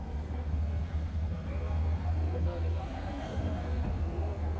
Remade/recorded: remade